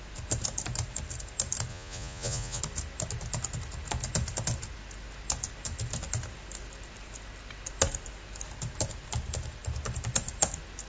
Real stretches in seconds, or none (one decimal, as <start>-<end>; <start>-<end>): 0.0-1.7; 2.6-10.9